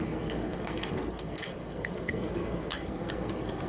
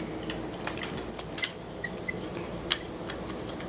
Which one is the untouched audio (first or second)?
second